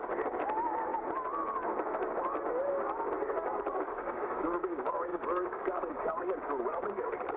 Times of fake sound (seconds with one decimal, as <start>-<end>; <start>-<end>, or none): 0.0-0.9; 3.6-7.4